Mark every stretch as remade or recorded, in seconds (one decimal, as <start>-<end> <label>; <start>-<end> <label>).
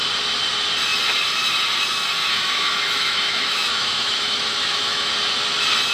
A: 0.0-2.2 recorded; 2.2-5.1 remade; 5.1-5.9 recorded